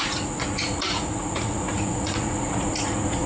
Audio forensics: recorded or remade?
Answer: remade